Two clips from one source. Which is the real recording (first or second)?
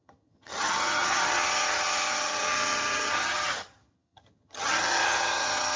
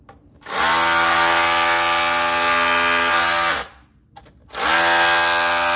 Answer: second